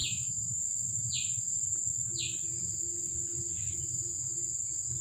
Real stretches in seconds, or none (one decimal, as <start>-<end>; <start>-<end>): 0.6-5.0